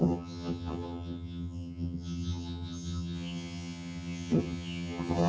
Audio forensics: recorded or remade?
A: remade